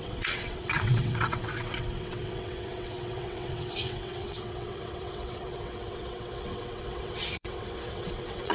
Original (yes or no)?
no